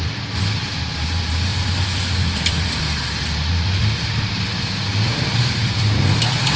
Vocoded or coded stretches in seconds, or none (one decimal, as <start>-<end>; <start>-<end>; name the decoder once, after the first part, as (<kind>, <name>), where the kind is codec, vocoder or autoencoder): 0.0-6.6 (vocoder, BigVGAN v2)